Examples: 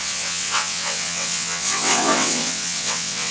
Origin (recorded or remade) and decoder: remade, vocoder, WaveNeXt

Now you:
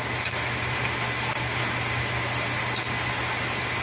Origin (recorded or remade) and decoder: recorded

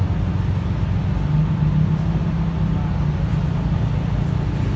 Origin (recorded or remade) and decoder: recorded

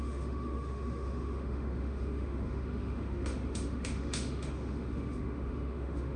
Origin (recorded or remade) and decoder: remade, autoencoder, DAC-VAE